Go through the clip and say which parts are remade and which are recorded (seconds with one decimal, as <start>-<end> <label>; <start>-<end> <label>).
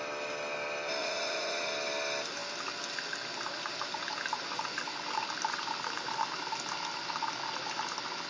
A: 0.0-1.0 recorded; 1.0-1.7 remade; 1.7-8.3 recorded